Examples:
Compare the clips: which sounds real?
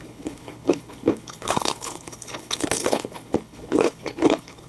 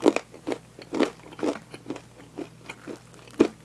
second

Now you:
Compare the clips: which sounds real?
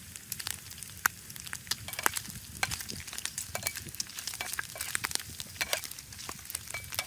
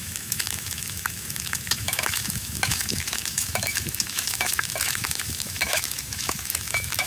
first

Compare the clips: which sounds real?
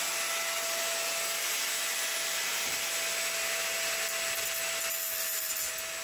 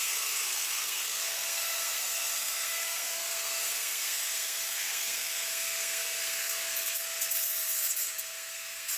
first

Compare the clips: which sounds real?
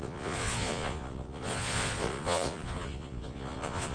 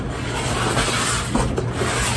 second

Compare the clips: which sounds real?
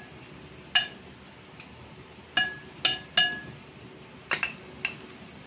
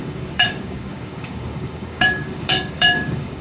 first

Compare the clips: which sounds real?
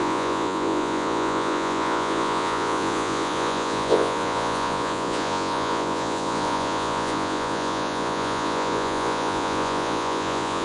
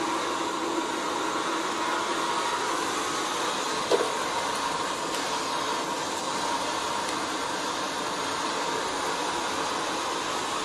second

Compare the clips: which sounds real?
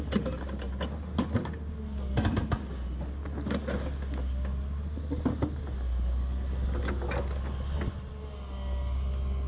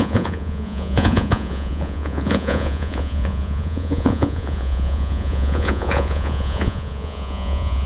first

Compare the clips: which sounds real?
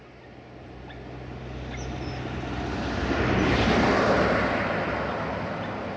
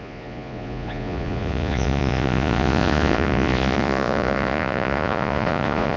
first